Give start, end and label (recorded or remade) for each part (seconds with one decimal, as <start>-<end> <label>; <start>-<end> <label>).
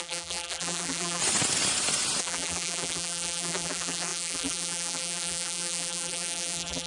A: 0.0-1.2 remade; 1.2-2.2 recorded; 2.2-6.9 remade